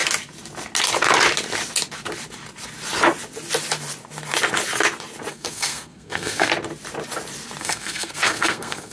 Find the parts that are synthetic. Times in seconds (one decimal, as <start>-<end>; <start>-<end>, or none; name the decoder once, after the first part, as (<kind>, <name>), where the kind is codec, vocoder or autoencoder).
5.3-6.5 (codec, SNAC); 7.6-8.9